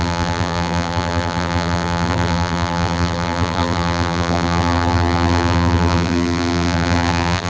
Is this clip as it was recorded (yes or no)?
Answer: no